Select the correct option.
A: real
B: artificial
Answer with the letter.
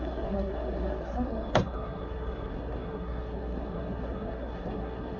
B